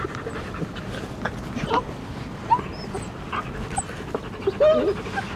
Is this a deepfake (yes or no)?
no